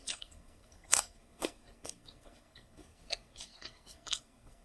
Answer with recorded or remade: remade